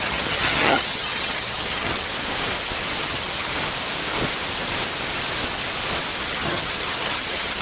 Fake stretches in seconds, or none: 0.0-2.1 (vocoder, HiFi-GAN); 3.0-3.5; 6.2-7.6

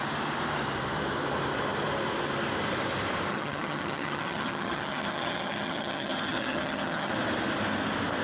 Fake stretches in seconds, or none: 3.3-7.1 (vocoder, HiFi-GAN)

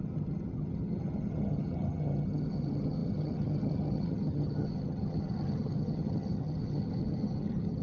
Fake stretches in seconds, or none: 0.0-7.8 (vocoder, HiFi-GAN)

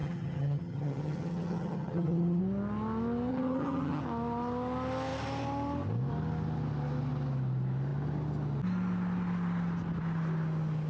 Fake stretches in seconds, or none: 0.0-2.4 (vocoder, HiFi-GAN); 3.3-4.0

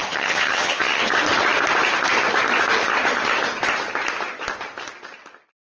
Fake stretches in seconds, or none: 0.0-1.0 (vocoder, HiFi-GAN)

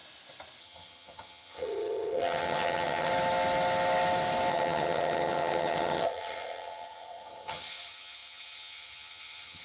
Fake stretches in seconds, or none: 0.6-3.1 (vocoder, HiFi-GAN); 4.5-9.6

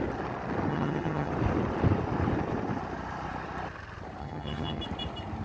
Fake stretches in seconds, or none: 0.7-1.3 (vocoder, HiFi-GAN); 4.2-4.8

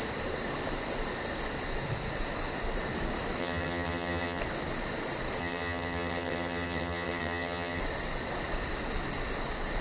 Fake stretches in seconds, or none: 3.4-4.4 (vocoder, HiFi-GAN); 5.4-7.8